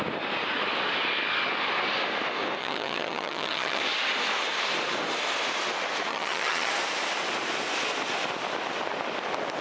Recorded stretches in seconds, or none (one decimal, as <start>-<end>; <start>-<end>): 0.0-2.6; 3.8-6.1; 6.7-9.6